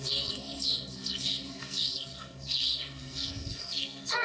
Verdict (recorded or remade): remade